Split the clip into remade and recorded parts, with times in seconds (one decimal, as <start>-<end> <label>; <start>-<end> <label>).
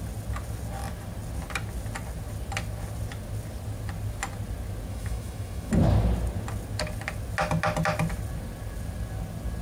0.0-4.9 recorded; 4.9-5.7 remade; 5.7-9.6 recorded